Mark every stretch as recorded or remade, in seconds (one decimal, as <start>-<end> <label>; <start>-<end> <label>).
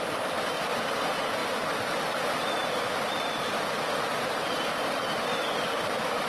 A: 0.0-6.3 recorded